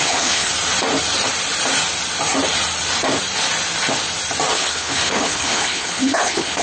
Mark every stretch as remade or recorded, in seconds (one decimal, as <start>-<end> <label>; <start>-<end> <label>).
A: 0.0-0.5 remade; 0.5-4.5 recorded; 4.5-6.6 remade